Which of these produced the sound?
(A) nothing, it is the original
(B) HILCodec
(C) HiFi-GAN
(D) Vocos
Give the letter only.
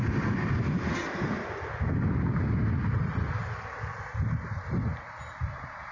A